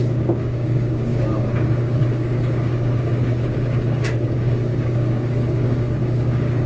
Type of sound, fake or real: fake